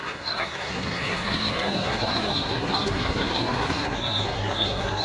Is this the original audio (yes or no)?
no